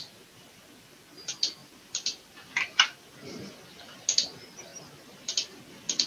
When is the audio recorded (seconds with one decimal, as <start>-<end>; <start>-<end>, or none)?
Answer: 0.0-1.6; 3.7-6.1